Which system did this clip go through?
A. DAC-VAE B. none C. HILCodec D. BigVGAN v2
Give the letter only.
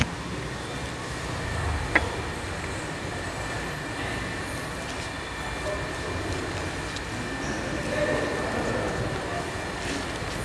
B